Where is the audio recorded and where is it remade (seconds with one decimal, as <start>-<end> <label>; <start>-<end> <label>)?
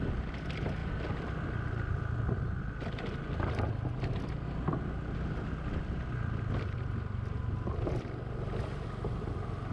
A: 0.0-0.8 recorded; 0.8-3.7 remade; 3.7-9.7 recorded